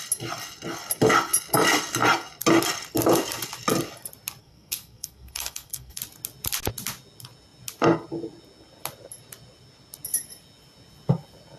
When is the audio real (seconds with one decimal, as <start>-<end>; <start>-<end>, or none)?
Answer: 0.0-4.4; 6.0-11.6